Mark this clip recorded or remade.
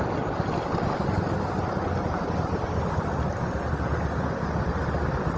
recorded